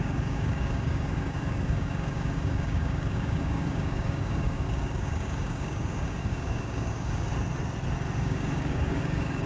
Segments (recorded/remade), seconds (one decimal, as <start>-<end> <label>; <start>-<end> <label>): 0.0-7.3 remade; 7.3-8.2 recorded; 8.2-9.5 remade